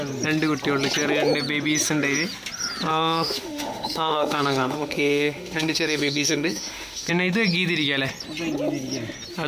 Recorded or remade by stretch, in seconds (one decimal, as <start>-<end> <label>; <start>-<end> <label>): 0.0-2.9 recorded; 2.9-7.1 remade; 7.1-9.5 recorded